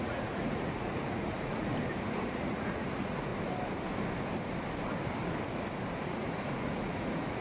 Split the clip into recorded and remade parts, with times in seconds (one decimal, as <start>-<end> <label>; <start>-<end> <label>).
0.0-1.7 remade; 1.7-2.2 recorded; 2.2-3.3 remade; 3.3-6.0 recorded; 6.0-7.4 remade